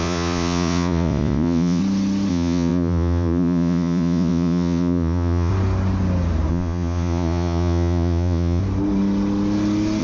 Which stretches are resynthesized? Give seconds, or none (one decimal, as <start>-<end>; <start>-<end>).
0.0-1.8; 2.3-5.5; 6.5-8.6